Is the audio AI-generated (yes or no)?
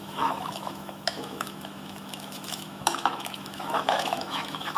yes